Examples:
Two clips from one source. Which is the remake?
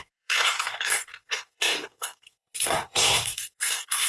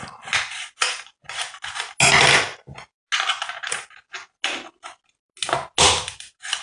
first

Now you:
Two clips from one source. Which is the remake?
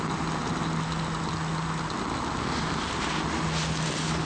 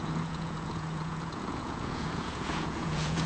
second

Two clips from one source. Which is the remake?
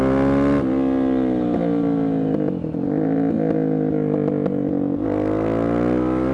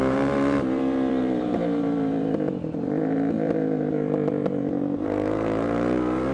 second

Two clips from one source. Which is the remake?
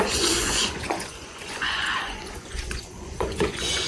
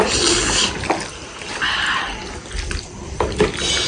first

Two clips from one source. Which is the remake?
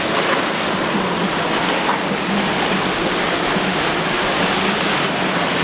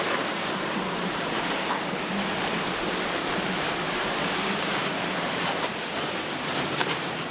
second